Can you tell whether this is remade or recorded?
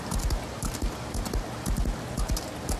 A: recorded